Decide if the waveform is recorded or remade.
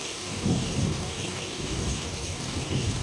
remade